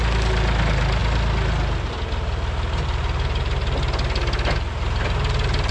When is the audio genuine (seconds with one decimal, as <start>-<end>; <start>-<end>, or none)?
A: 0.0-5.7